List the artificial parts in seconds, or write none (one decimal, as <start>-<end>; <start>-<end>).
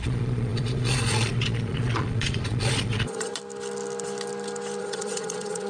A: 0.0-3.3; 4.8-5.7